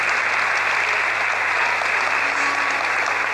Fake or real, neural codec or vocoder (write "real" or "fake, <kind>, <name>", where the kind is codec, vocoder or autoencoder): real